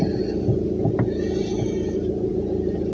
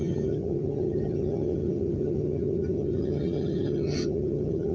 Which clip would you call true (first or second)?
first